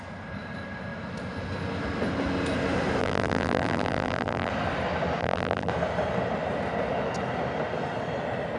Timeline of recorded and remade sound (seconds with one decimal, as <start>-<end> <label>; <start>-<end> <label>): 0.0-3.0 recorded; 3.0-4.5 remade; 4.5-5.2 recorded; 5.2-5.7 remade; 5.7-8.6 recorded